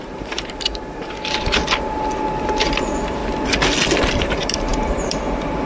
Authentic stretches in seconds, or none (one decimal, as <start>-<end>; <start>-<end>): 1.6-2.4; 3.2-4.2